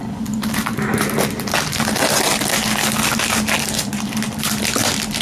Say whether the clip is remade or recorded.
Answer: recorded